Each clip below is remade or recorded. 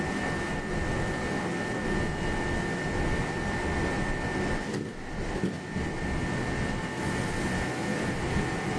recorded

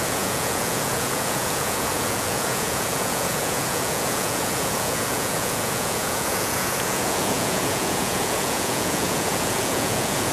remade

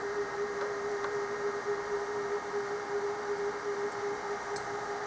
recorded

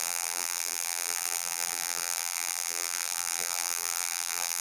remade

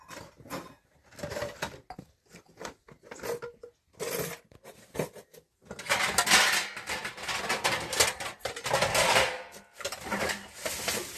recorded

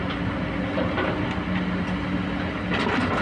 recorded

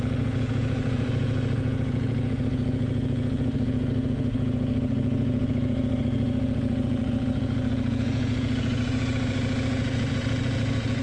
remade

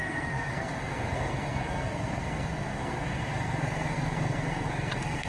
remade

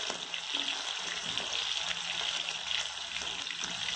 recorded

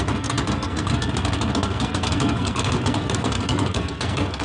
remade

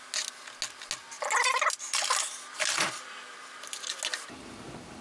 recorded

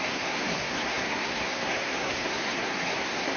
remade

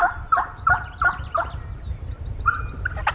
recorded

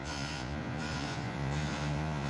remade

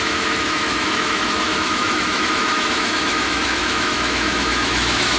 remade